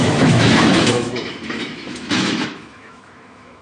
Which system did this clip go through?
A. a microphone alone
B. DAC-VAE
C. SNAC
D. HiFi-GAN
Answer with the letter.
B